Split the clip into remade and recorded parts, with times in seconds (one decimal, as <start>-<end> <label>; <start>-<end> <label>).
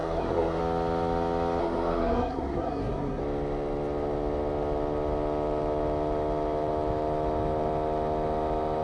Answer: 0.0-0.6 remade; 0.6-1.6 recorded; 1.6-3.2 remade; 3.2-8.8 recorded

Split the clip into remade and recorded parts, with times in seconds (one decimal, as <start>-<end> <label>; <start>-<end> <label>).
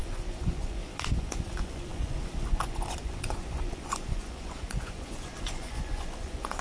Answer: 0.0-6.6 remade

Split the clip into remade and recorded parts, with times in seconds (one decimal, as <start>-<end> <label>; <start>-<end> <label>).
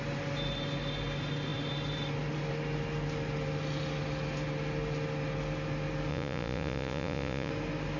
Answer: 0.0-6.1 recorded; 6.1-7.5 remade; 7.5-8.0 recorded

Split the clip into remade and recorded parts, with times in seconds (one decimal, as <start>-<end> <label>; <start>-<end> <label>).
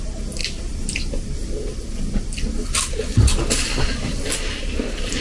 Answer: 0.0-5.2 recorded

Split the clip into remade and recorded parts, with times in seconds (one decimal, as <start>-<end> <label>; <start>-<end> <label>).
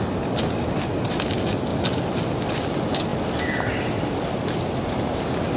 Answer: 0.0-5.6 recorded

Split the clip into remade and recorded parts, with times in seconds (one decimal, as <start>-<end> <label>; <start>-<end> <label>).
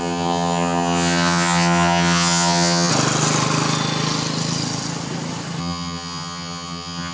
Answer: 0.0-2.9 remade; 2.9-5.6 recorded; 5.6-7.1 remade